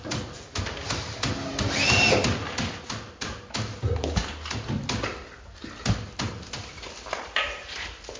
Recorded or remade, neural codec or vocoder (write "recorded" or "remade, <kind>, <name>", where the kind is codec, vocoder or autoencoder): recorded